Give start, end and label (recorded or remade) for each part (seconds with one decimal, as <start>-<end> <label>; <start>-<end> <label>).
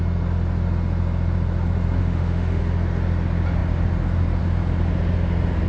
0.0-2.0 recorded; 2.0-2.6 remade; 2.6-5.7 recorded